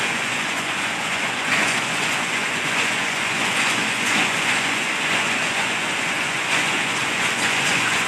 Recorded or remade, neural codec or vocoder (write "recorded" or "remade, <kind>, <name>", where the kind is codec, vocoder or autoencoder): remade, vocoder, Vocos